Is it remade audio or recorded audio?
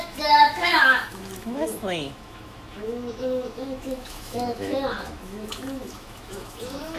remade